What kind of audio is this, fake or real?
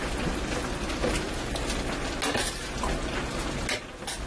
real